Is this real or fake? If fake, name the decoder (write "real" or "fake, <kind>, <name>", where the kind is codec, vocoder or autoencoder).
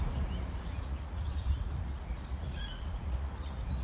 fake, vocoder, Vocos